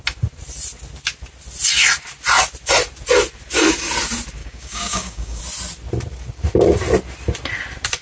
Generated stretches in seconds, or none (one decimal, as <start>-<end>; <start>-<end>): 4.4-5.4